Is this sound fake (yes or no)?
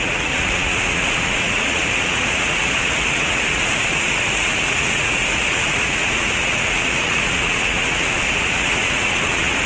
yes